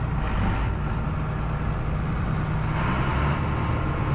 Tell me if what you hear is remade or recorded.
recorded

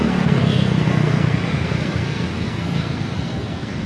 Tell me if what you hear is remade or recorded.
remade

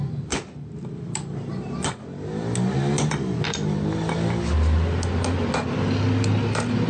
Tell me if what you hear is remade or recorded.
recorded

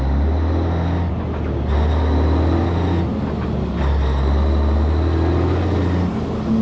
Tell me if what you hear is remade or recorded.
recorded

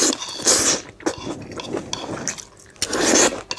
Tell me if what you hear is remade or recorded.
recorded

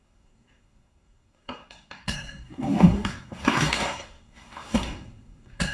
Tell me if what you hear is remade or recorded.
remade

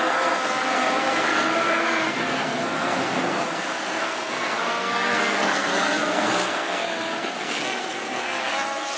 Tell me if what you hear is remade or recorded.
remade